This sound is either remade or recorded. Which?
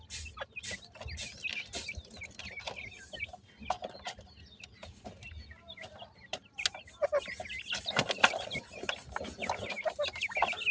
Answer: recorded